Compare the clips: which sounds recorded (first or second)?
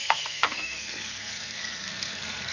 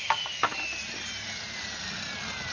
second